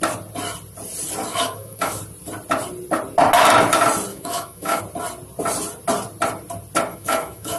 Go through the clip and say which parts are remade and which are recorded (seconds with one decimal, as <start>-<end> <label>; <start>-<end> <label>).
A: 0.0-1.3 recorded; 1.3-2.0 remade; 2.0-4.1 recorded; 4.1-4.8 remade; 4.8-6.9 recorded; 6.9-7.6 remade